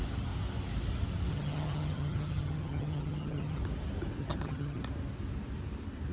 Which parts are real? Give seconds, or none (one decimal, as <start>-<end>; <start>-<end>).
0.0-1.3; 3.6-4.2; 4.8-6.1